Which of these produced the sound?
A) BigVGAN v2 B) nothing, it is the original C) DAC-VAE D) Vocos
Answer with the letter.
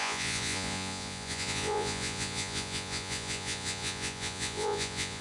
D